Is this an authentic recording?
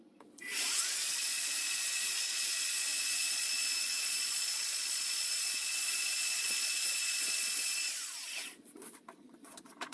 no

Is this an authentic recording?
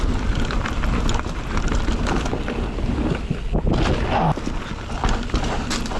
yes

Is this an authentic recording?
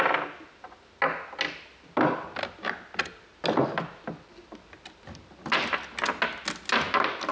yes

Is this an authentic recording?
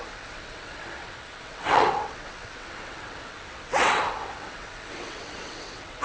no